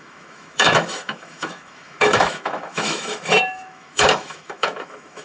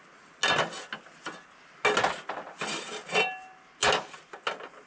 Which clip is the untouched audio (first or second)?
second